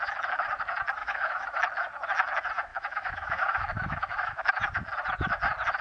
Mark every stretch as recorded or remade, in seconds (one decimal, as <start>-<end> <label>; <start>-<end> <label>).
0.0-1.0 recorded; 1.0-1.6 remade; 1.6-2.7 recorded; 2.7-4.5 remade; 4.5-5.8 recorded